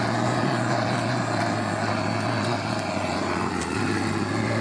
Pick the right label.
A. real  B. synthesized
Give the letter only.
A